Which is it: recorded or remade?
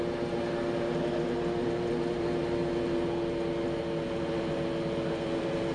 recorded